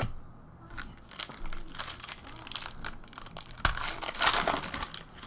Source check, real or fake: real